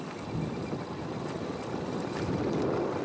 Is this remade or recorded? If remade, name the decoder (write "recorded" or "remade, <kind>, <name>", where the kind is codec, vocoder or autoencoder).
recorded